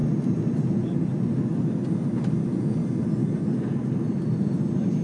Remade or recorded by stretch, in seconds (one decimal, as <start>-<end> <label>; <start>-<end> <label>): 0.0-5.0 recorded